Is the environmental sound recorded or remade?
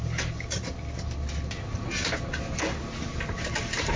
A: recorded